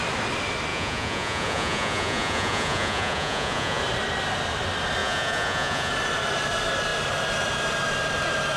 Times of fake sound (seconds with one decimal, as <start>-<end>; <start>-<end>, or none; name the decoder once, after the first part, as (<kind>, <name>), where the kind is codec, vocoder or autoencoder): 0.7-3.8 (vocoder, Vocos); 5.0-5.9